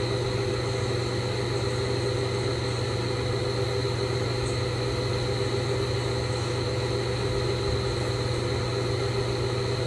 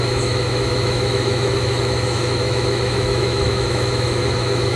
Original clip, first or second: first